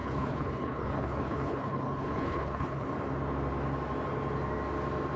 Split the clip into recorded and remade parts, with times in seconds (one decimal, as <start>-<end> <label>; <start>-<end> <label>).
0.0-2.9 remade; 2.9-5.2 recorded